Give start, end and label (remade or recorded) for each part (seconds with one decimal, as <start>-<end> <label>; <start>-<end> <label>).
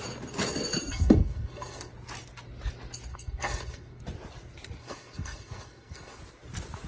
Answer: 0.0-0.9 recorded; 0.9-1.9 remade; 1.9-3.1 recorded; 3.1-4.0 remade; 4.0-4.8 recorded; 4.8-6.2 remade; 6.2-6.9 recorded